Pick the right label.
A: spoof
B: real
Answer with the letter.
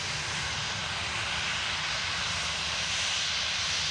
B